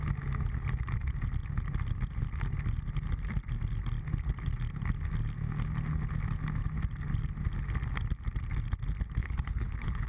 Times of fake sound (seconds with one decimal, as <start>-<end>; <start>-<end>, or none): 9.2-10.1